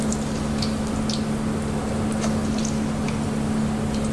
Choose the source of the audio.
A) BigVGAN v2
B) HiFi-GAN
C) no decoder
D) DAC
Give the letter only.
C